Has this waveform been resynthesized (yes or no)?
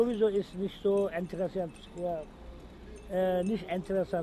no